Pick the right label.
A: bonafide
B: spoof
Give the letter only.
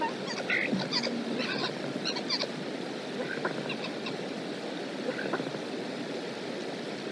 A